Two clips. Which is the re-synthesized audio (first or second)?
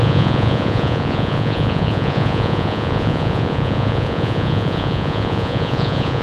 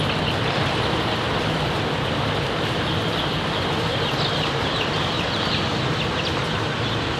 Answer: first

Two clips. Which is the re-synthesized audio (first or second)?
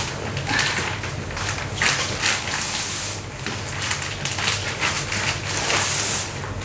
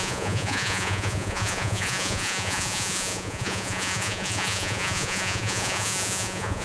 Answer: second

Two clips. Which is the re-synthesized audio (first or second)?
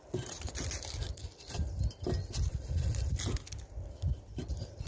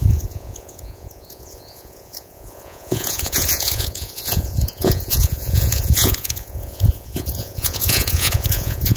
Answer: second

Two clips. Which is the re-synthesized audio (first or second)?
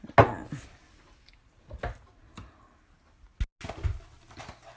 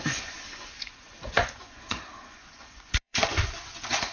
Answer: second